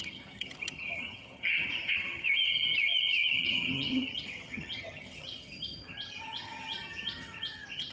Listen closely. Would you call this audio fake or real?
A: fake